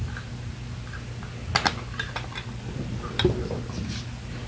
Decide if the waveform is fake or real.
real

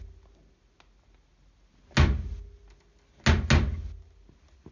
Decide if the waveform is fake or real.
real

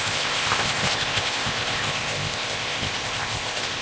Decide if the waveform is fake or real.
fake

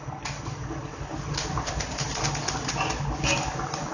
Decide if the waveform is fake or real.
real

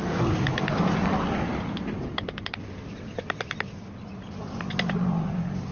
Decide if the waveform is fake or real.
real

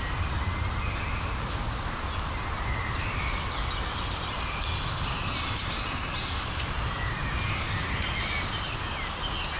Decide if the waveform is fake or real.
real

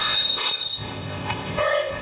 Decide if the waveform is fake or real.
fake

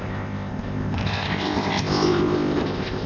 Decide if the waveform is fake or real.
fake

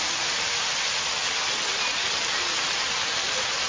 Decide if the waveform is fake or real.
real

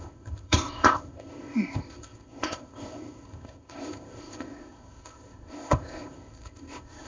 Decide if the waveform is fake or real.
fake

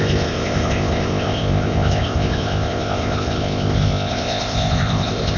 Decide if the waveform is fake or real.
fake